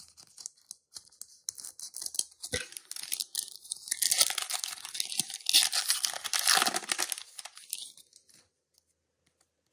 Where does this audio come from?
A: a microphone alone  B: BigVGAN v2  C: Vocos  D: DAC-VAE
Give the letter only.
A